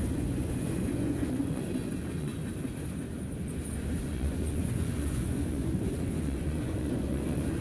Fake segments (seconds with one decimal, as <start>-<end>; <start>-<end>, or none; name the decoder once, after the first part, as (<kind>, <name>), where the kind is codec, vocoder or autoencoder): 0.0-2.3 (vocoder, Vocos); 4.0-7.6